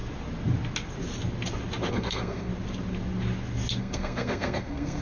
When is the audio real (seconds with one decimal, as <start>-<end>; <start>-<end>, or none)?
0.0-1.9; 2.5-3.8